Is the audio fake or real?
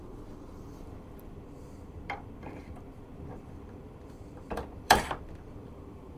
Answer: fake